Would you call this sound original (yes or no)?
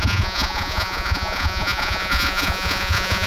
no